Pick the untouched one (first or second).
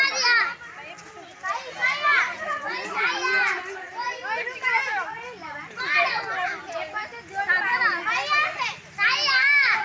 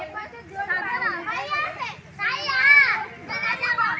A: first